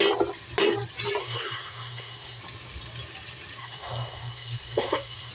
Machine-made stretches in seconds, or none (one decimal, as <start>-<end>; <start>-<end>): 1.2-2.4; 3.6-5.3